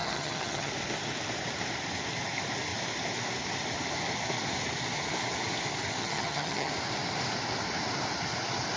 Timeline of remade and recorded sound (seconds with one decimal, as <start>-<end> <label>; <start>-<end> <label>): 0.0-0.7 remade; 0.7-6.0 recorded; 6.0-6.7 remade; 6.7-8.8 recorded